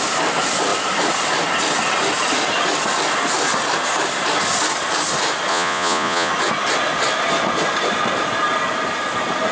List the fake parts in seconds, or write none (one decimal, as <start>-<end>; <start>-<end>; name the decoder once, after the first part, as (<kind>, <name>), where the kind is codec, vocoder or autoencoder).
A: 5.5-6.3 (vocoder, Vocos)